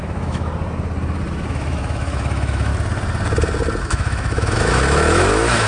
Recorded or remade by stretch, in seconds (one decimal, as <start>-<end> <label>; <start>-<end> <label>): 0.0-0.5 remade; 0.5-1.5 recorded; 1.5-2.7 remade; 2.7-3.8 recorded; 3.8-5.7 remade